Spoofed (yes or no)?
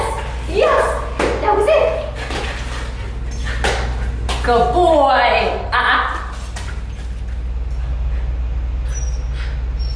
no